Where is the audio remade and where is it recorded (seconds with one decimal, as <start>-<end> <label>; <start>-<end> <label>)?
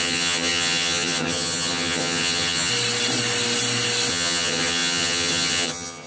0.0-2.7 remade; 2.7-4.1 recorded; 4.1-6.1 remade